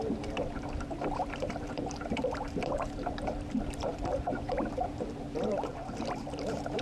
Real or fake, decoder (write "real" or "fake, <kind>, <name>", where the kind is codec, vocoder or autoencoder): fake, vocoder, BigVGAN v2